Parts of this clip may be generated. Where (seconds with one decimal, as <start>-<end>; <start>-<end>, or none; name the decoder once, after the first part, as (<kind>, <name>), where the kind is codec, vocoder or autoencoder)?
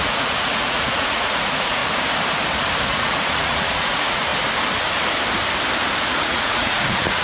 0.0-1.8 (vocoder, Vocos); 2.9-4.3; 6.0-7.2